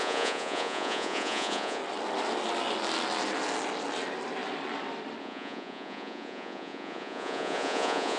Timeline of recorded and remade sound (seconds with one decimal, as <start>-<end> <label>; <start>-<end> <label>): 0.0-1.8 remade; 1.8-5.2 recorded; 5.2-8.2 remade